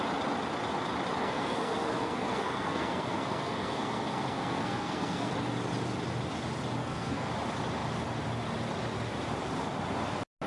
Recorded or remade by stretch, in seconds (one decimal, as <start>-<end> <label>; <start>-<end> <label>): 0.0-1.2 recorded; 1.2-5.3 remade; 5.3-6.8 recorded; 6.8-7.3 remade; 7.3-10.5 recorded